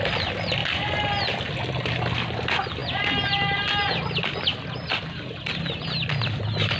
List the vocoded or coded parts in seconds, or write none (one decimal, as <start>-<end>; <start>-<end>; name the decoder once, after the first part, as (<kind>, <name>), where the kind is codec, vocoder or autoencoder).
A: 2.8-3.7 (vocoder, BigVGAN v2); 4.5-5.0